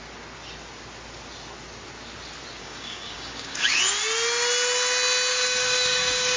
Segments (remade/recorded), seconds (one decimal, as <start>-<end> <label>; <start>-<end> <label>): 0.0-2.6 recorded; 2.6-3.8 remade; 3.8-5.3 recorded; 5.3-6.4 remade